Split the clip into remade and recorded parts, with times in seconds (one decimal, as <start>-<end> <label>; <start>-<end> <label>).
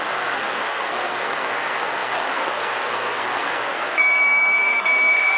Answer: 0.0-5.4 remade